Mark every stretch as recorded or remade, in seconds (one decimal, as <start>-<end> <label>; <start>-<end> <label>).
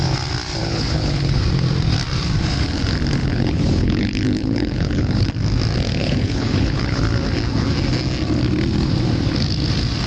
0.0-0.6 recorded; 0.6-1.4 remade; 1.4-3.2 recorded; 3.2-5.3 remade; 5.3-6.0 recorded; 6.0-7.0 remade; 7.0-10.1 recorded